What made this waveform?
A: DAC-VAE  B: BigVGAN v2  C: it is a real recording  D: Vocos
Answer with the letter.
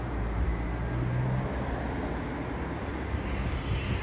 C